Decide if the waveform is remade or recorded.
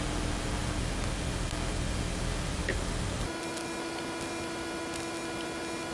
recorded